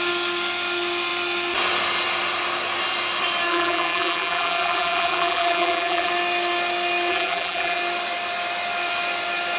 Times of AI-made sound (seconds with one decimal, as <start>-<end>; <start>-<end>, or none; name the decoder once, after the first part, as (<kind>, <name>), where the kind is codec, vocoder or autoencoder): 3.5-6.1 (vocoder, BigVGAN v2); 7.1-7.8